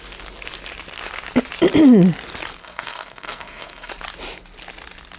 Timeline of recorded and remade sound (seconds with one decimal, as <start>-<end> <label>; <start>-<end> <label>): 0.0-2.6 recorded; 2.6-3.9 remade; 3.9-5.2 recorded